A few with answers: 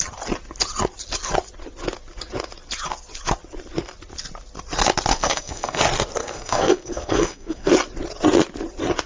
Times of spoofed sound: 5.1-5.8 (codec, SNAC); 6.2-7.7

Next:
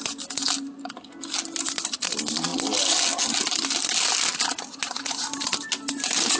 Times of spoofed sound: none

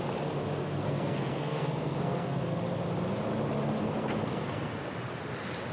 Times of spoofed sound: 0.6-2.6 (codec, SNAC); 3.8-4.8